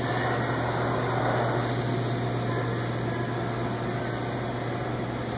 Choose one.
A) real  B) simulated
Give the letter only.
A